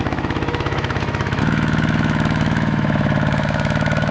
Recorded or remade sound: remade